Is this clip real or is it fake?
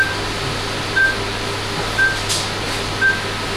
real